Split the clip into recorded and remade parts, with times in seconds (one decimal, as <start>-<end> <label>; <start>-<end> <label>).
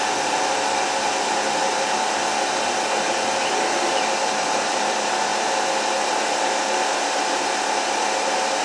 0.0-8.6 recorded